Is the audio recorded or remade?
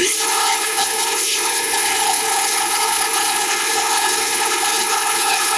remade